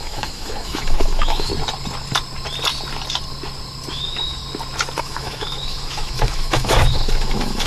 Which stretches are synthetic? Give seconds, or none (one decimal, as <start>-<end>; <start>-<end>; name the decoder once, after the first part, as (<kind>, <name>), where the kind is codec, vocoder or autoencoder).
0.0-1.5 (autoencoder, DAC-VAE); 3.9-4.4; 5.0-7.7